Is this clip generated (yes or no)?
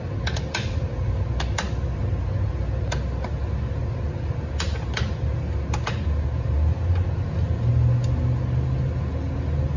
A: no